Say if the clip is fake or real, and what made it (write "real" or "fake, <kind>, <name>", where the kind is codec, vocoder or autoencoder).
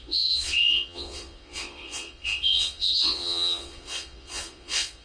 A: fake, vocoder, Vocos